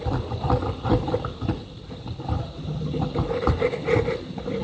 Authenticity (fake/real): real